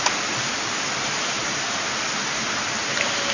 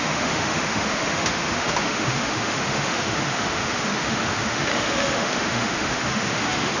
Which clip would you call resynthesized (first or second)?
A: second